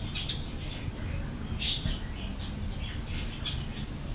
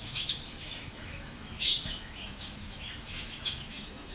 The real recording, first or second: first